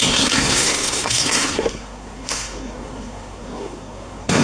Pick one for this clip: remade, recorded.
remade